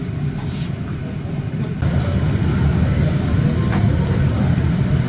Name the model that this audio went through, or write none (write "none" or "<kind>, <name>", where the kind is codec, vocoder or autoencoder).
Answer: vocoder, BigVGAN v2